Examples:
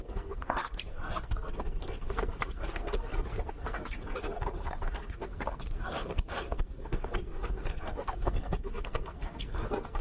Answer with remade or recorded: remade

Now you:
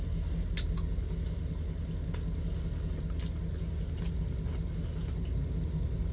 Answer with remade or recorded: recorded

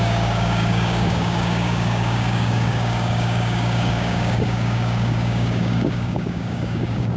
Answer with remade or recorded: remade